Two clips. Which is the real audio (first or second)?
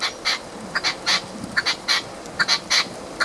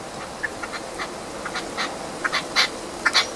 second